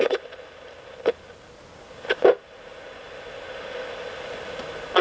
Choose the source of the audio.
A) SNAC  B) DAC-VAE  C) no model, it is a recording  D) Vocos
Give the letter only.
C